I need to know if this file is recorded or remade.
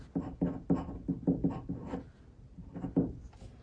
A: recorded